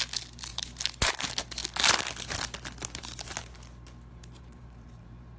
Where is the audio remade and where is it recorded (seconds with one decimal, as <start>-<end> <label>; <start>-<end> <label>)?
0.0-0.5 recorded; 0.5-1.2 remade; 1.2-4.1 recorded; 4.1-5.4 remade